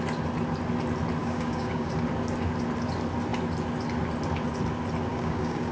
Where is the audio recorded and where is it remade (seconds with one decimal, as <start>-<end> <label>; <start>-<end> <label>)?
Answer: 0.0-1.2 recorded; 1.2-1.9 remade; 1.9-5.1 recorded; 5.1-5.7 remade